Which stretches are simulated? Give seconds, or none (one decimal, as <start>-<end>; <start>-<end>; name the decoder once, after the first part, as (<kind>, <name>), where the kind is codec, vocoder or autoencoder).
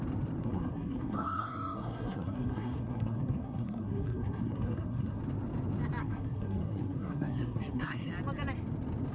0.4-5.2 (codec, SNAC); 6.0-8.1